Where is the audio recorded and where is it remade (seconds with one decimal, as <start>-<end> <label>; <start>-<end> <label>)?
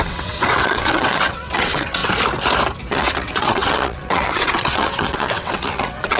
0.0-2.0 remade; 2.0-2.9 recorded; 2.9-6.2 remade